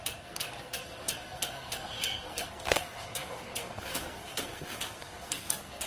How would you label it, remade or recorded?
remade